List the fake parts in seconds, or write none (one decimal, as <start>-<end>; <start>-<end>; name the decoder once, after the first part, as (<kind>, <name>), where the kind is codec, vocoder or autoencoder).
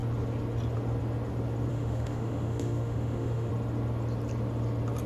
1.7-3.5 (autoencoder, DAC-VAE)